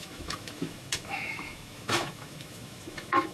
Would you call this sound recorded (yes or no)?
no